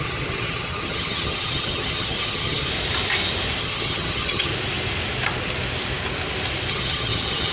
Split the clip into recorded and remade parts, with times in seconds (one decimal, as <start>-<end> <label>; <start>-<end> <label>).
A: 0.0-2.7 remade; 2.7-3.6 recorded; 3.6-4.5 remade; 4.5-6.7 recorded; 6.7-7.5 remade